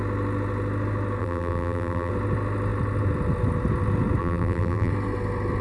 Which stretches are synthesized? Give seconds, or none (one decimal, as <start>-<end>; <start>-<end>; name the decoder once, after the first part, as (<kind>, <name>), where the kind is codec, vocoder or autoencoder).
1.2-2.1 (vocoder, BigVGAN v2); 4.2-4.9